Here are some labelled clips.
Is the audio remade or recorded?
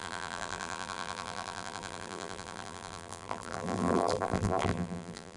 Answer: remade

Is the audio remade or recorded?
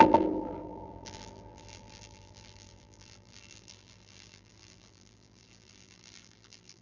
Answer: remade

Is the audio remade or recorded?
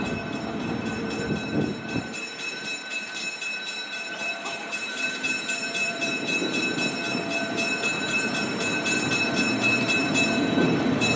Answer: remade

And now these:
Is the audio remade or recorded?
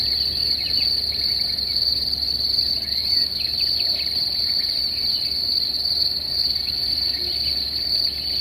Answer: recorded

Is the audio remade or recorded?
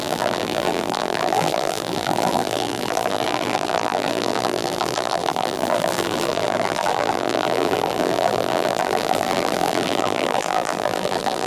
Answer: remade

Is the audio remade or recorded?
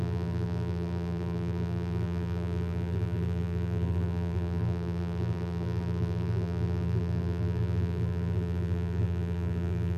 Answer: remade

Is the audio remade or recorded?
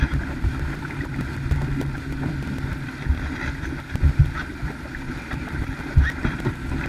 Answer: recorded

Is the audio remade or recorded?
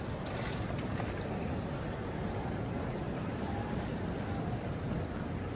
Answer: recorded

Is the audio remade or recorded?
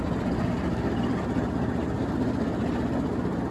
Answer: recorded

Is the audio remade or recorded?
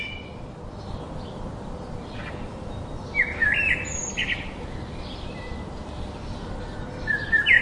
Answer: recorded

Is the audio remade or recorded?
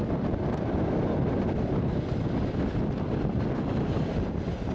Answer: recorded